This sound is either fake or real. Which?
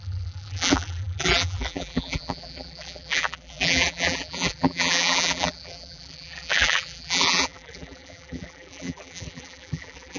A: fake